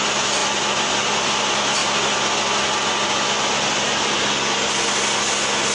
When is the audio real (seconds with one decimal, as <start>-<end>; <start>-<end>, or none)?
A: 0.0-5.7